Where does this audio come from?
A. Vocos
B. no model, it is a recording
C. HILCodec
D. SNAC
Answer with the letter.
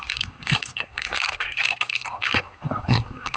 D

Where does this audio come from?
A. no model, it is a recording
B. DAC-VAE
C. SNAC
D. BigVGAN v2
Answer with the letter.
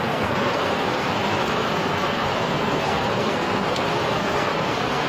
C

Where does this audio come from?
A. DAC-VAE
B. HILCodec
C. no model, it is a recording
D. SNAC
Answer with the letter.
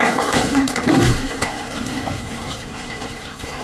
D